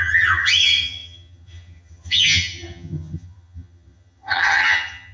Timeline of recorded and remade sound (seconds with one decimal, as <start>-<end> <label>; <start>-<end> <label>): 0.0-5.1 remade